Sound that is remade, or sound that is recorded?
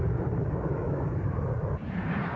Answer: remade